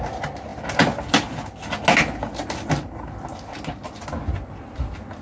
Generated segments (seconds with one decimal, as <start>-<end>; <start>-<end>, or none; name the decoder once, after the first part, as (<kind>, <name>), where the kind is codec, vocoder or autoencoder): none